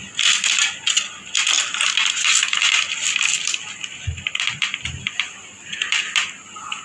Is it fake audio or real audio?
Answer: fake